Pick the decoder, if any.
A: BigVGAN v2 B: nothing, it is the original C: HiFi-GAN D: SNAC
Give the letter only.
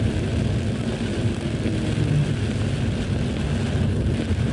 B